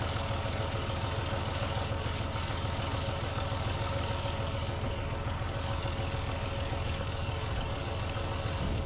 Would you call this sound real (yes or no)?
no